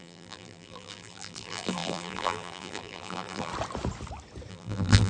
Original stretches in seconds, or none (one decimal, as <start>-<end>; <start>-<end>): 3.5-4.5

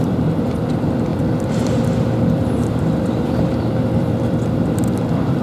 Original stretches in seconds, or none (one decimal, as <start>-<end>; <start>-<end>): none

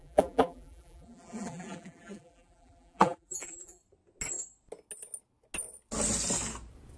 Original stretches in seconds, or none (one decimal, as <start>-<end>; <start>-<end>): 3.8-7.0